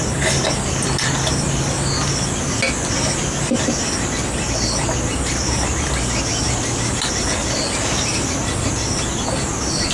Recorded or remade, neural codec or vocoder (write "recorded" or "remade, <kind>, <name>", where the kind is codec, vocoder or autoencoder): recorded